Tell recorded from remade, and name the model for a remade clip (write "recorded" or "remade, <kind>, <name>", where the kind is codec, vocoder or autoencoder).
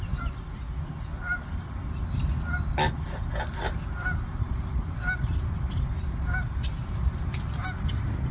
recorded